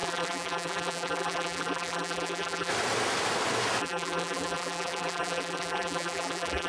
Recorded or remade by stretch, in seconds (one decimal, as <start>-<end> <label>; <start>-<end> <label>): 0.0-2.7 remade; 2.7-3.8 recorded; 3.8-6.7 remade